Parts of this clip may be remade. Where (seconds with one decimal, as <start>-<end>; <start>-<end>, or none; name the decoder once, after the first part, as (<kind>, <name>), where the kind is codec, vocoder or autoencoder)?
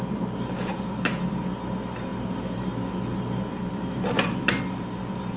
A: none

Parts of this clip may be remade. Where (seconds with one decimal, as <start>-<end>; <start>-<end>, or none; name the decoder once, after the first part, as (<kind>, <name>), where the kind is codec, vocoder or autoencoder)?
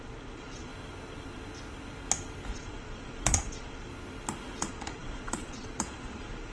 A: 0.0-0.7 (vocoder, Vocos); 2.5-3.9; 4.6-6.5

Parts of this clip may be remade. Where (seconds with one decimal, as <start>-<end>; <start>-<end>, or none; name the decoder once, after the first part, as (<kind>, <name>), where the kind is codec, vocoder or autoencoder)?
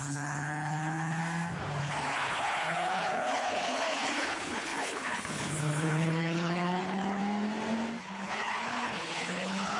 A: 0.0-1.2 (codec, HILCodec); 1.8-7.2; 8.0-9.8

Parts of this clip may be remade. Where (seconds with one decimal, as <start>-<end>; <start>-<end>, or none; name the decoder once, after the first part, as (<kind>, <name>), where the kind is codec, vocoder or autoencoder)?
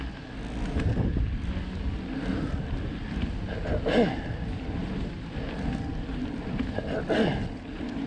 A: none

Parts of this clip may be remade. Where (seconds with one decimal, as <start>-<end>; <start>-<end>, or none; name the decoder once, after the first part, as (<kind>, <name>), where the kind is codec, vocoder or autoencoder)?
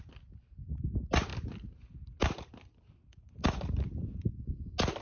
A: none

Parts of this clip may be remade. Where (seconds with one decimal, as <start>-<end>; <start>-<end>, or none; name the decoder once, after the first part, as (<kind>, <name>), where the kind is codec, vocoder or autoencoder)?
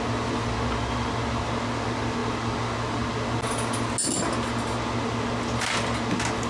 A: none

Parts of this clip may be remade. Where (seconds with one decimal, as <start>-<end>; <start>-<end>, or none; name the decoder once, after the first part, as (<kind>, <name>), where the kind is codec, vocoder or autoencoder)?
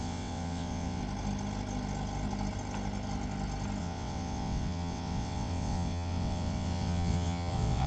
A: 0.0-1.0 (vocoder, WaveNeXt); 3.8-7.9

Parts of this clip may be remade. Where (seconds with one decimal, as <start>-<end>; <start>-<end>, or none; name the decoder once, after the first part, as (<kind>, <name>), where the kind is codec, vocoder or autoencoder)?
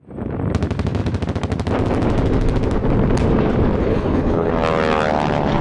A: 3.8-4.5 (codec, HILCodec)